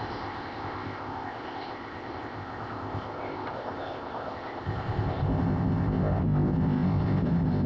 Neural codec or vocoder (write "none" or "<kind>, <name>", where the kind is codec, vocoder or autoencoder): codec, ZipCodec